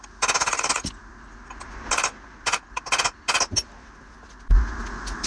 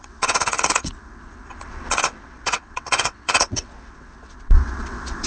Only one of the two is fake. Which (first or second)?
second